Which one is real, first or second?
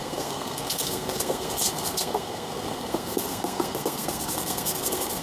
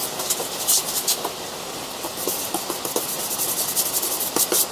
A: second